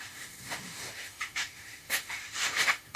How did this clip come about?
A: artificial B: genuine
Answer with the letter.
A